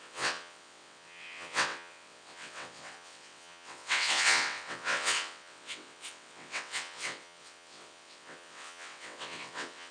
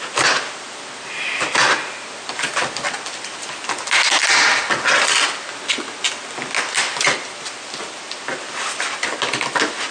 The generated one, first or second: first